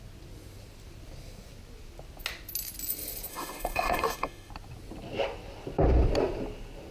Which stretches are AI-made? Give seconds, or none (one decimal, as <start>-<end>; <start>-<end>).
3.3-4.5